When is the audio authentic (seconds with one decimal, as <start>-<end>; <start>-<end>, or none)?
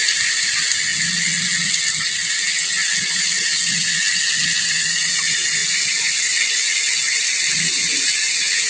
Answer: 0.0-0.9; 1.8-5.6; 7.6-8.7